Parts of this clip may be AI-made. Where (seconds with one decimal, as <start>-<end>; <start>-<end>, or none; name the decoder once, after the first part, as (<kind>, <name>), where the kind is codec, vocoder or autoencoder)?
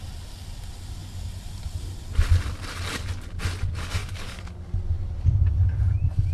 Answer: 4.0-4.7 (codec, DAC)